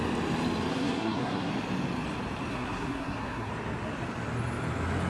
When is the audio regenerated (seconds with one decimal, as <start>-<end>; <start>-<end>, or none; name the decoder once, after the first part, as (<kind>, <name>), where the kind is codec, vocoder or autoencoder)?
0.7-1.5 (codec, SNAC); 2.5-3.5